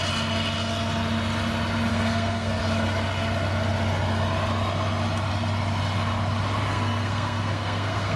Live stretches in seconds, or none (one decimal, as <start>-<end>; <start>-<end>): 0.0-1.9; 2.6-6.7